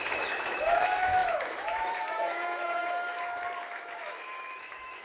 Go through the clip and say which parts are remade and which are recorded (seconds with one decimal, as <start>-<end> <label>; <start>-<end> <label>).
0.0-5.0 remade